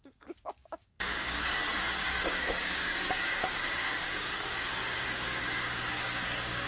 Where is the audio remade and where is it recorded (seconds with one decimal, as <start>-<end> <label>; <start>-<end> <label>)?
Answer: 0.0-6.7 remade